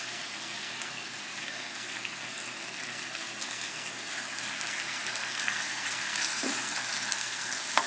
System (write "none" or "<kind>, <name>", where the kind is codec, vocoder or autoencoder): codec, SNAC